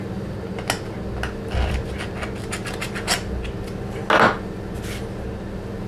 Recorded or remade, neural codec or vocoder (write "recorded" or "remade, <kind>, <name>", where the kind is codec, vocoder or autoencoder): recorded